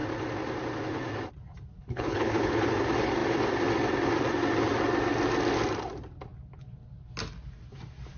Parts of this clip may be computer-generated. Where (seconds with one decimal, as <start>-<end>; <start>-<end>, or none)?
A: 1.8-2.7